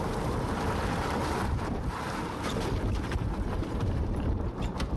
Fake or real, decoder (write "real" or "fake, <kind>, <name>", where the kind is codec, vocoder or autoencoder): fake, vocoder, BigVGAN v2